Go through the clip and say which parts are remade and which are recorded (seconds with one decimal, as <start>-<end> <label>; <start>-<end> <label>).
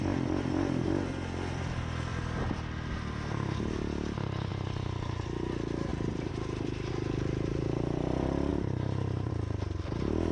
0.0-5.9 recorded; 5.9-6.9 remade; 6.9-8.5 recorded; 8.5-9.3 remade; 9.3-10.3 recorded